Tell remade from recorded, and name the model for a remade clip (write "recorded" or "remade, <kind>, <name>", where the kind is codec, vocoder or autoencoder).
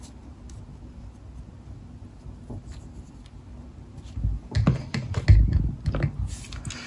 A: recorded